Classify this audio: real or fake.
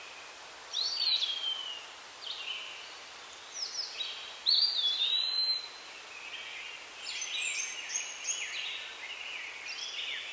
real